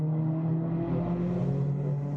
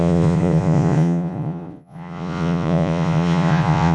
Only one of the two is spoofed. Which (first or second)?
second